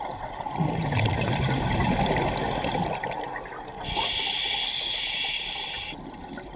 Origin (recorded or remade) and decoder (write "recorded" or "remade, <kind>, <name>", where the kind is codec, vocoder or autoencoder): recorded